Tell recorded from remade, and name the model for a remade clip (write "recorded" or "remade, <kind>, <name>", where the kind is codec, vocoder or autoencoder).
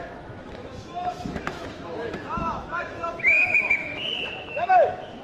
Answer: remade, autoencoder, DAC-VAE